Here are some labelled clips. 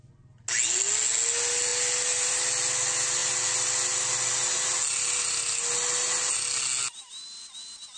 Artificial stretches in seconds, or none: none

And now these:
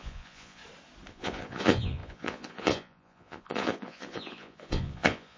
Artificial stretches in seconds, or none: 0.0-0.6 (vocoder, Vocos); 1.1-5.4

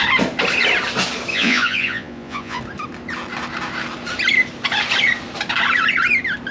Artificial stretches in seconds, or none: 1.3-2.6 (vocoder, Vocos)

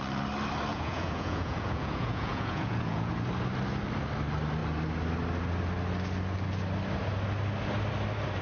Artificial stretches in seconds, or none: 0.7-3.1 (vocoder, Vocos)

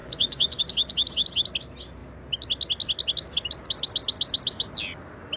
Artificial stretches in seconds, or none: 0.0-0.6 (vocoder, Vocos)

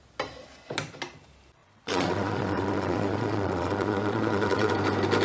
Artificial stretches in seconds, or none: 1.6-4.7 (vocoder, Vocos)

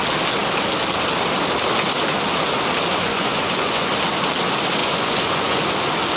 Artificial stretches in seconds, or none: 2.9-3.9 (vocoder, Vocos); 4.8-5.6

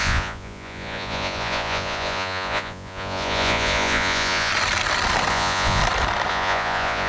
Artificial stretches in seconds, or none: 0.0-4.5 (vocoder, Vocos); 5.3-5.8; 6.3-7.1